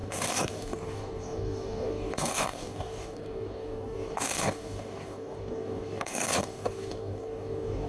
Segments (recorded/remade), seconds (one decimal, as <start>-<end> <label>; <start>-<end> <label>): 0.0-7.9 remade